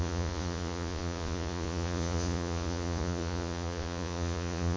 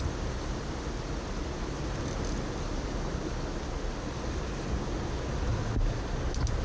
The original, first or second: second